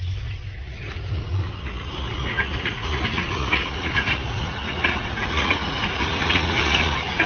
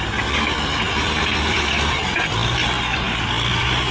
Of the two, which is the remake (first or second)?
first